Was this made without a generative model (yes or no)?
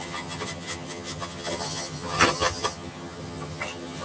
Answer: no